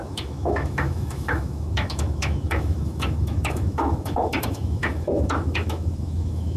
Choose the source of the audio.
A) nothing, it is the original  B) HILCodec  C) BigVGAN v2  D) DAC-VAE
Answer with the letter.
D